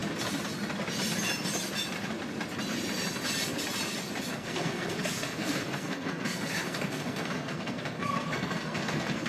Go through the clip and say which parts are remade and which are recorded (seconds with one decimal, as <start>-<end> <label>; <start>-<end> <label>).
0.0-4.3 recorded; 4.3-9.3 remade

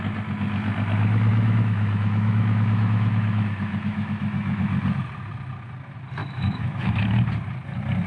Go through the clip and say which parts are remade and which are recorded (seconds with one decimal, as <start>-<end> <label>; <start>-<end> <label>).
0.0-1.3 recorded; 1.3-4.6 remade; 4.6-6.2 recorded; 6.2-7.0 remade; 7.0-8.1 recorded

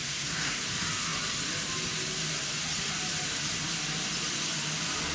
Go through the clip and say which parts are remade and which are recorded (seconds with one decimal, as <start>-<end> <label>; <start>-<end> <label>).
0.0-0.6 remade; 0.6-5.1 recorded

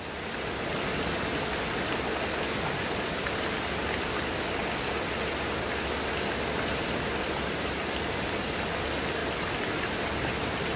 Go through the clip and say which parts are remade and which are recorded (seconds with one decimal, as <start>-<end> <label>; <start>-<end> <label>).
0.0-10.8 recorded

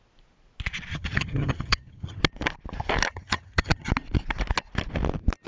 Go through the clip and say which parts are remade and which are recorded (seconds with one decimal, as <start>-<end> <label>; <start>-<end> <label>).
0.0-0.9 recorded; 0.9-2.2 remade; 2.2-3.1 recorded; 3.1-3.9 remade; 3.9-5.5 recorded